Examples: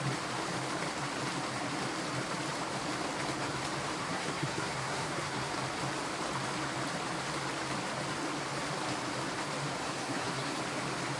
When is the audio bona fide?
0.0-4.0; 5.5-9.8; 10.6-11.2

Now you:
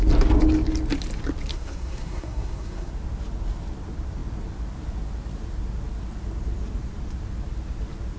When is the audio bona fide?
0.0-1.5; 2.9-8.2